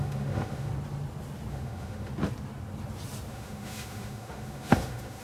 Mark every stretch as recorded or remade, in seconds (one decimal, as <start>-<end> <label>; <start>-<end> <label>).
0.0-0.7 remade; 0.7-1.5 recorded; 1.5-2.1 remade; 2.1-3.3 recorded; 3.3-5.2 remade